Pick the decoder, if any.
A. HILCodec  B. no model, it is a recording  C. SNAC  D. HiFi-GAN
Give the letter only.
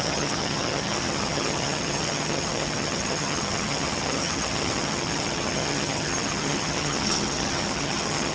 D